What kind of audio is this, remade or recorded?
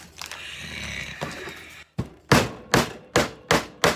recorded